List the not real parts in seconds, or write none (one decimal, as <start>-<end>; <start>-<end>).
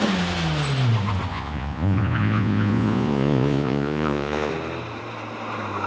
1.3-4.5